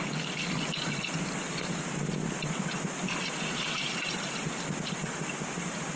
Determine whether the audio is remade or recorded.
recorded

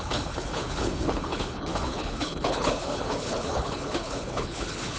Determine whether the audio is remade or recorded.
remade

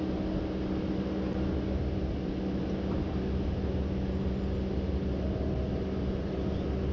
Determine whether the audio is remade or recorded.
recorded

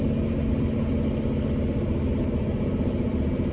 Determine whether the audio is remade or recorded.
recorded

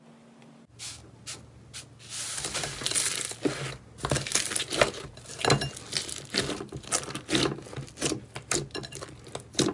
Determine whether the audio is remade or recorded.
recorded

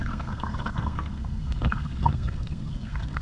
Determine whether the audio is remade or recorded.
remade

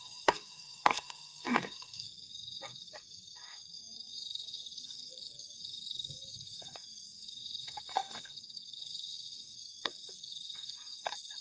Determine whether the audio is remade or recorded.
remade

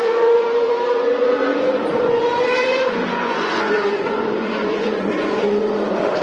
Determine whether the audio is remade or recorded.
remade